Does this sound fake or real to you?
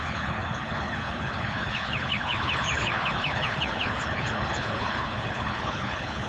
fake